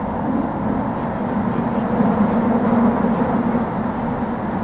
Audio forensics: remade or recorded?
recorded